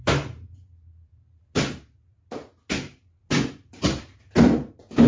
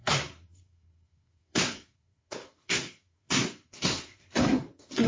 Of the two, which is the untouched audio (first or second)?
first